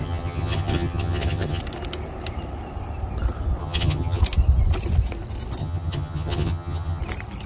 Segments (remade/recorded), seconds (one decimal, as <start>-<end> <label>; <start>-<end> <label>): 0.0-1.6 remade; 1.6-3.6 recorded; 3.6-4.2 remade; 4.2-5.6 recorded; 5.6-7.0 remade; 7.0-7.5 recorded